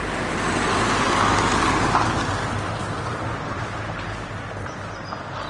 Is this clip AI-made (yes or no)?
no